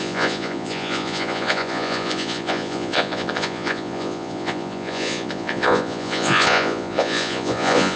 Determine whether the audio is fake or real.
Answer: fake